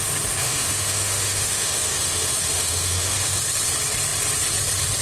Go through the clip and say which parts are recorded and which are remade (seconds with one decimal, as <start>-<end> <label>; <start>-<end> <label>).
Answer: 0.0-0.4 recorded; 0.4-3.4 remade; 3.4-5.0 recorded